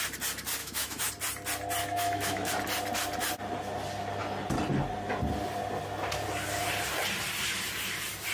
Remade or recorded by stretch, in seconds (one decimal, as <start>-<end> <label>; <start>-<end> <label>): 0.0-0.6 recorded; 0.6-1.1 remade; 1.1-1.8 recorded; 1.8-2.5 remade; 2.5-8.3 recorded